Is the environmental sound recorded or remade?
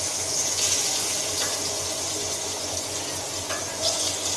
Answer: remade